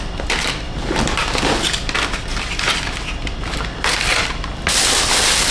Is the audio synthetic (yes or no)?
yes